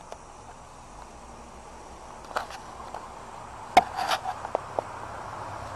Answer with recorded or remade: recorded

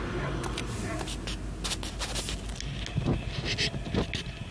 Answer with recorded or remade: recorded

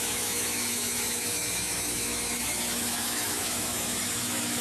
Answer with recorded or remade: remade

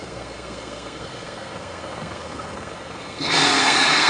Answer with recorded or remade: remade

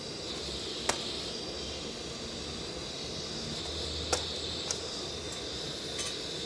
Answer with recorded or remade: recorded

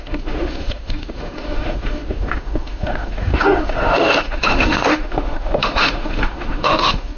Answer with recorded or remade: remade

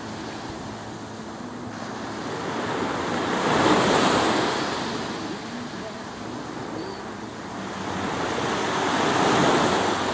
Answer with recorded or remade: recorded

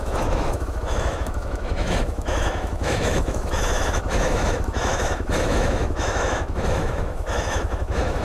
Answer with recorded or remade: remade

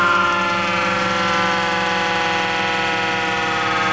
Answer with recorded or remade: recorded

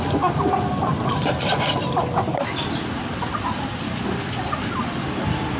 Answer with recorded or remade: recorded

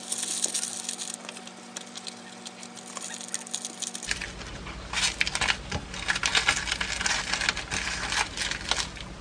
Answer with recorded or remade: recorded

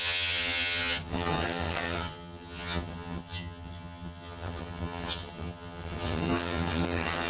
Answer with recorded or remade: remade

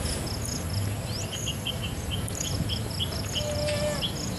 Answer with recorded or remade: recorded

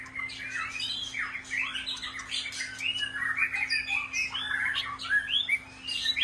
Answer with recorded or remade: recorded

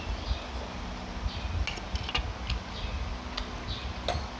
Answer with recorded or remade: recorded